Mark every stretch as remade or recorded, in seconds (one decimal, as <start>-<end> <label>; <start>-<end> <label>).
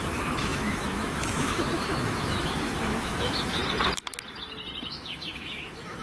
0.0-3.6 remade; 3.6-4.9 recorded; 4.9-6.0 remade